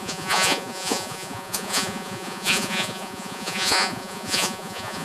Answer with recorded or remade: remade